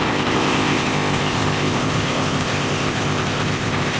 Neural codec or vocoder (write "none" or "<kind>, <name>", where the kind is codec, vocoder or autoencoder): codec, ZipCodec